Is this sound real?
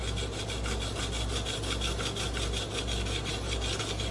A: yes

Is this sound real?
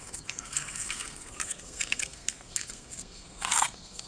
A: no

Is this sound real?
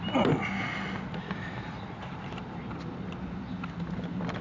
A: yes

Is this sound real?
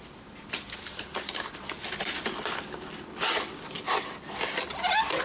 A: yes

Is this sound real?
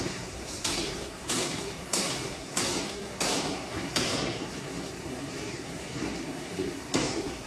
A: no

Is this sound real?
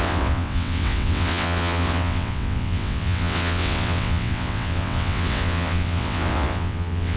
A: no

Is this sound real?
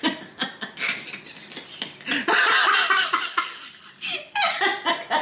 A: yes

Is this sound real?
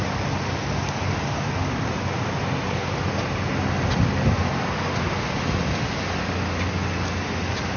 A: yes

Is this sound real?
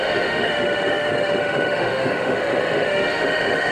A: no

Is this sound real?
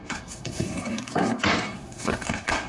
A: no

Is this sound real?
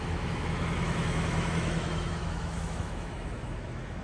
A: no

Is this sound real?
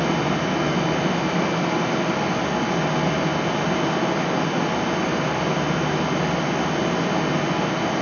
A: yes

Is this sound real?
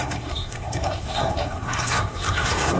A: no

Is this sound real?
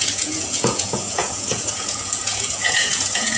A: no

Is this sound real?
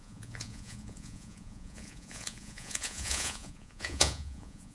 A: no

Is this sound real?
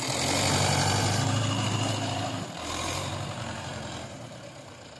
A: no